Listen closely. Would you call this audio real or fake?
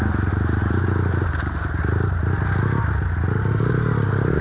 real